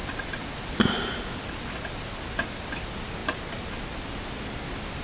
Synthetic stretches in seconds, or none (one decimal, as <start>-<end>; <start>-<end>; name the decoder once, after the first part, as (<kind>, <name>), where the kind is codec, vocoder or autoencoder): none